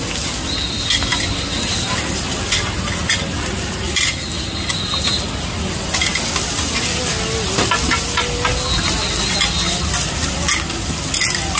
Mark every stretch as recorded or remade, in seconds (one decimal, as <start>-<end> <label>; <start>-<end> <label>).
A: 0.0-11.6 recorded